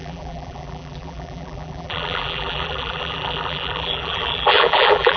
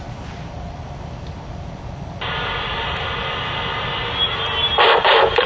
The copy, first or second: first